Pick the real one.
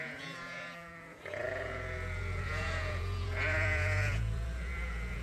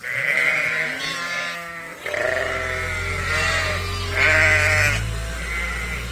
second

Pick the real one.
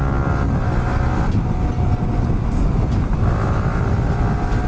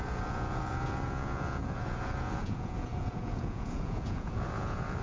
first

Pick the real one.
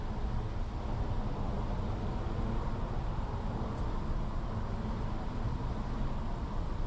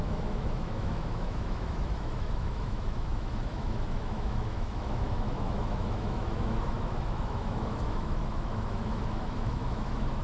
first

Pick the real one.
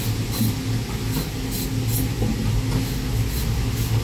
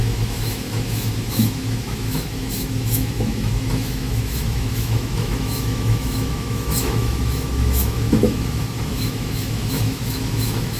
first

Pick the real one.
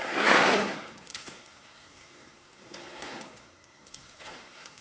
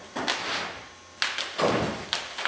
second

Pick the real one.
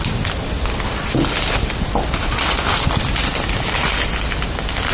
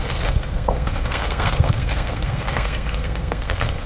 first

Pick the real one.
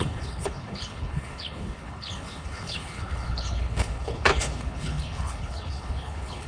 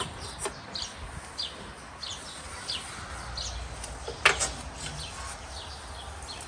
second